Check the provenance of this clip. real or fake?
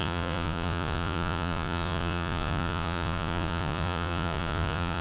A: fake